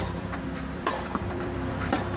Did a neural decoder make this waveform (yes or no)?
yes